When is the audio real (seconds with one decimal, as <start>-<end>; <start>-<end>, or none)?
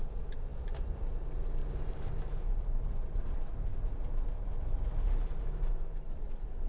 1.6-2.4; 3.7-6.2